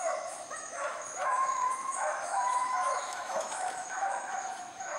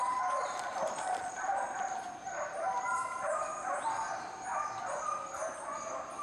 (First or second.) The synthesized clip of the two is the first